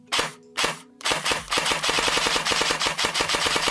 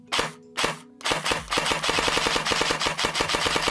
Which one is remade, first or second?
first